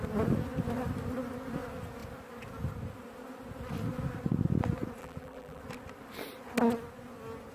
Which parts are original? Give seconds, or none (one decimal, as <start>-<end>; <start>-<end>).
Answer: 0.0-5.0; 5.6-7.5